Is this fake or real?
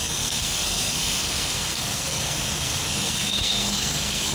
fake